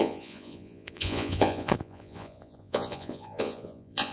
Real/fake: fake